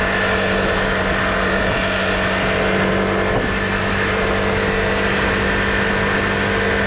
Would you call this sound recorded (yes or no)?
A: yes